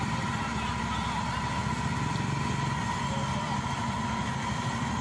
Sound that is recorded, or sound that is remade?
recorded